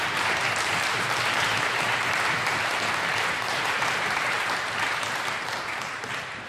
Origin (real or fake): fake